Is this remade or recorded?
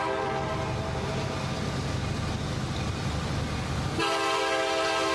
recorded